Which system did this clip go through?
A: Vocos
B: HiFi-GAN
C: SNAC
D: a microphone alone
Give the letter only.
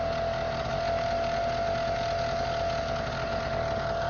D